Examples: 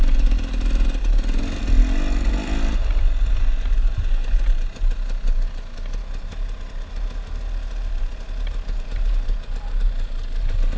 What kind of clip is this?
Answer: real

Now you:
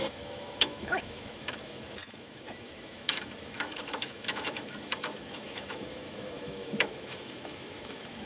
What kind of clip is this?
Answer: fake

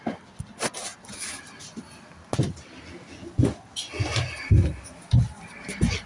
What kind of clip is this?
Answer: real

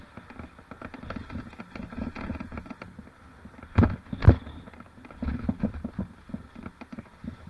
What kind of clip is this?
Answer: real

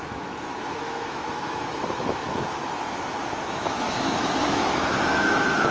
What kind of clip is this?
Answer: fake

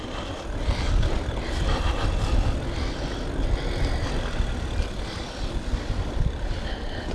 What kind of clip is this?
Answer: real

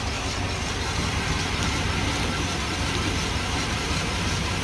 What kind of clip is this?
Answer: real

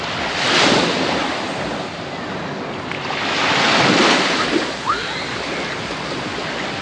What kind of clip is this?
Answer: real